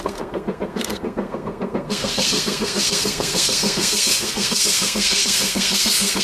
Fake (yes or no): yes